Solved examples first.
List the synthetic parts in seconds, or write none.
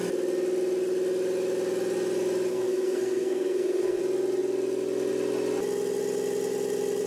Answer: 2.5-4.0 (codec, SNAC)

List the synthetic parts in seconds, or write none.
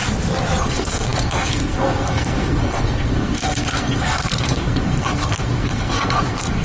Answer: 0.6-6.6 (codec, SNAC)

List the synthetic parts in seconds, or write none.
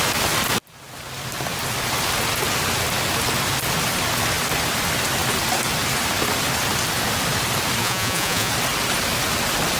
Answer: 7.8-8.5 (vocoder, Vocos)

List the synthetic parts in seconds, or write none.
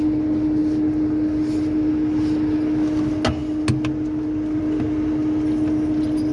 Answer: none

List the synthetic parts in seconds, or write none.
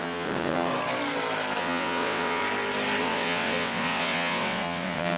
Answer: 0.0-0.7 (vocoder, WaveNeXt); 1.6-2.4; 3.0-5.2